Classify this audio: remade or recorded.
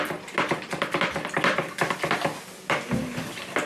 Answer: recorded